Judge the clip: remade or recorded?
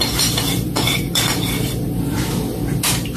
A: remade